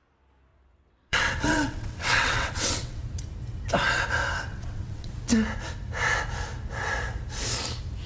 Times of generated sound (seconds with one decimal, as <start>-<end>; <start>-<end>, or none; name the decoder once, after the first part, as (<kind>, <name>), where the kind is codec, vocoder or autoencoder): 0.5-3.0 (vocoder, WaveNeXt); 4.5-5.1